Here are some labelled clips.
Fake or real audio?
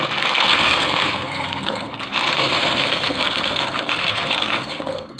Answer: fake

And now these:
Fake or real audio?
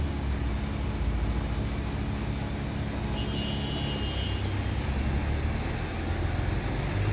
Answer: real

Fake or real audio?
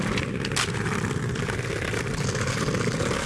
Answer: real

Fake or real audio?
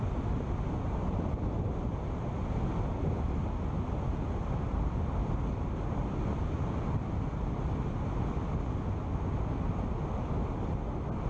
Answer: real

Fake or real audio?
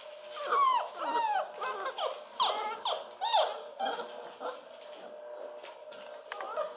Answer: real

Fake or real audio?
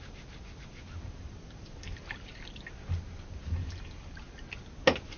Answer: real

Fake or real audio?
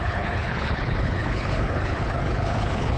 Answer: fake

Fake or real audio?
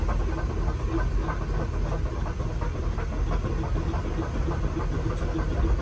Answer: real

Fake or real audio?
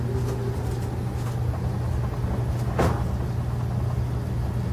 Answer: real